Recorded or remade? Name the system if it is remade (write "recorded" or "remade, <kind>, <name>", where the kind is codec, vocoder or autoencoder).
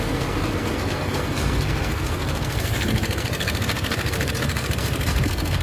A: remade, codec, SNAC